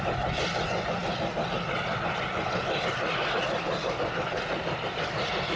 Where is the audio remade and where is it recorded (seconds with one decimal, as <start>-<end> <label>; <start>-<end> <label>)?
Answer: 0.0-5.6 recorded